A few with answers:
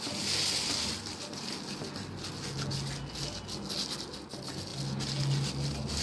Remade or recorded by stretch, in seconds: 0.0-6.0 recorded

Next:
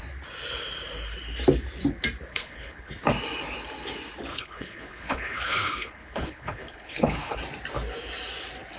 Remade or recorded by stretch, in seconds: 0.0-2.3 recorded; 2.3-2.9 remade; 2.9-4.3 recorded; 4.3-7.4 remade; 7.4-8.8 recorded

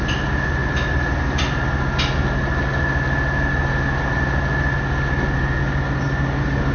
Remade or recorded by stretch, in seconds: 0.0-6.7 recorded

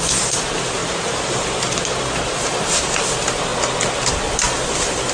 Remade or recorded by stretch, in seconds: 0.0-0.8 recorded; 0.8-2.0 remade; 2.0-5.1 recorded

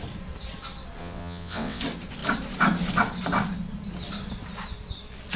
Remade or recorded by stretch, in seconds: 0.0-1.0 recorded; 1.0-1.8 remade; 1.8-5.4 recorded

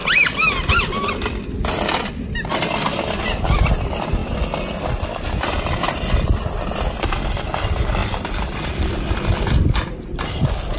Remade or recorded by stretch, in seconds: 0.0-2.1 remade; 2.1-8.0 recorded; 8.0-10.4 remade; 10.4-10.8 recorded

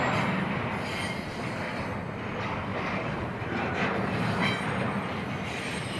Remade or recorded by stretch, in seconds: 0.0-2.7 recorded; 2.7-4.4 remade; 4.4-6.0 recorded